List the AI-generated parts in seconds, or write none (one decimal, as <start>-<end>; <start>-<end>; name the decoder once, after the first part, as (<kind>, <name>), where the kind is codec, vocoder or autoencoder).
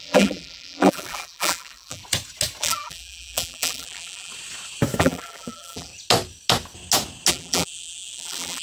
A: 0.0-2.0 (vocoder, BigVGAN v2); 2.6-4.3; 5.0-5.9; 7.3-8.6